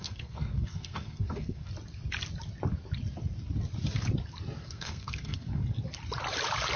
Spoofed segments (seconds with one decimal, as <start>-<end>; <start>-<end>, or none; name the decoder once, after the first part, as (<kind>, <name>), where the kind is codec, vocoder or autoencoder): 0.0-1.6 (codec, SNAC); 4.6-5.6